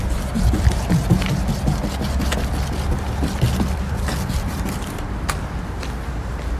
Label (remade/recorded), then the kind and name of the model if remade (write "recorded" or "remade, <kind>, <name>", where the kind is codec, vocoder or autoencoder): recorded